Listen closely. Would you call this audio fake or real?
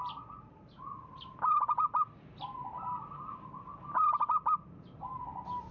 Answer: real